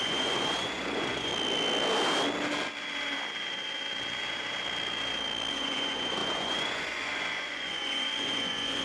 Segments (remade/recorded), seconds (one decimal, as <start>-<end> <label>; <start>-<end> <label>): 0.0-1.3 remade; 1.3-5.5 recorded; 5.5-8.8 remade